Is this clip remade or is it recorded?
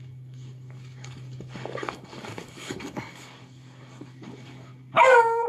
remade